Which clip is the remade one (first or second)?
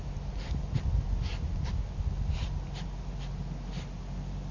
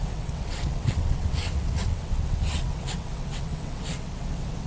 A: second